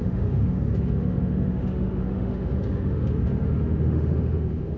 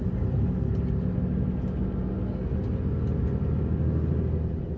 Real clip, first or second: second